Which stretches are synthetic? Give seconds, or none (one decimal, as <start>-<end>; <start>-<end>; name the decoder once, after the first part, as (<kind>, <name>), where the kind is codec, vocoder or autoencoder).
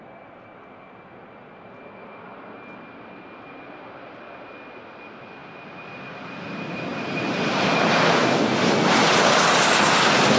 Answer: none